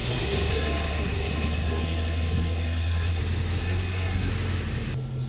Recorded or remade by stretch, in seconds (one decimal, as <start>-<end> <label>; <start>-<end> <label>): 0.0-3.2 remade; 3.2-3.6 recorded; 3.6-4.3 remade; 4.3-5.3 recorded